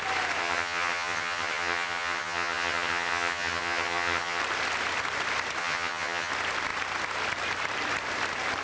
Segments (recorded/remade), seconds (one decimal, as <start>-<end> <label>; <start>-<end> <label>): 0.0-0.4 recorded; 0.4-4.4 remade; 4.4-5.6 recorded; 5.6-6.3 remade; 6.3-8.6 recorded